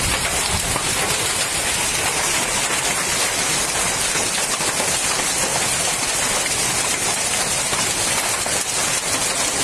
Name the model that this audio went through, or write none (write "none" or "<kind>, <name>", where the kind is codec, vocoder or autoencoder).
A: none